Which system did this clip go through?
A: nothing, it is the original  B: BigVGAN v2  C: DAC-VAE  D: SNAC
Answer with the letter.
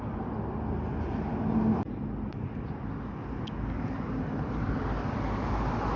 A